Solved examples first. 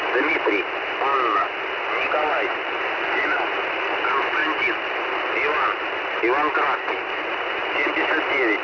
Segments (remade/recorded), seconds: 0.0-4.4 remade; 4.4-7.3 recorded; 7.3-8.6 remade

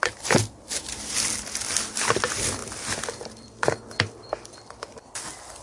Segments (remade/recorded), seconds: 0.0-5.6 recorded

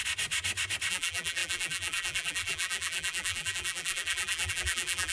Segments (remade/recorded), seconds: 0.0-0.9 recorded; 0.9-5.1 remade

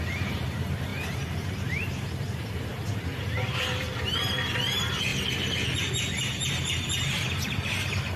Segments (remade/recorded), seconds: 0.0-2.7 remade; 2.7-3.2 recorded; 3.2-8.2 remade

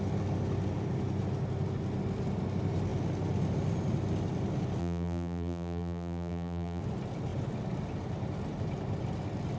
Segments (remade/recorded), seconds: 0.0-4.8 recorded; 4.8-6.8 remade; 6.8-9.6 recorded

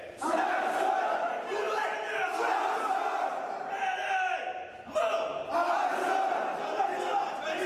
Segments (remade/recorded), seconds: 0.0-7.7 recorded